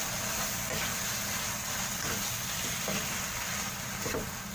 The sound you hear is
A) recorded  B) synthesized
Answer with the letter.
A